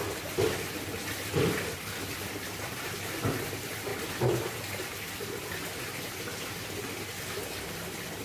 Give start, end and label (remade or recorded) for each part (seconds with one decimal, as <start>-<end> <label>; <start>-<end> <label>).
0.0-8.2 recorded